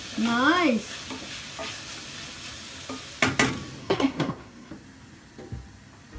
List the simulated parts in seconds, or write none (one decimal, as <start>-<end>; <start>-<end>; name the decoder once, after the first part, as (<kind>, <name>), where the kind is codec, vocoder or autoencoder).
3.8-4.7 (codec, SNAC)